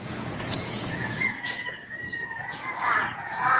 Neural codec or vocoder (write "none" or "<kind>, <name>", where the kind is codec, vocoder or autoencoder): vocoder, Vocos